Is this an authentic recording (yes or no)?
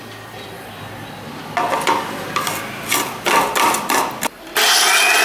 yes